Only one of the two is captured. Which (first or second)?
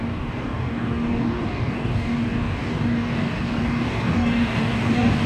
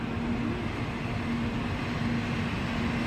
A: second